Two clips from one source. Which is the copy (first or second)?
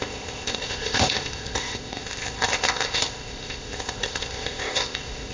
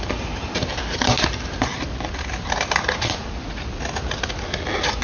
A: first